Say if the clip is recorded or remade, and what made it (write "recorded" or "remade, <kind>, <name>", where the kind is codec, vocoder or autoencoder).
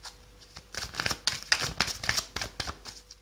recorded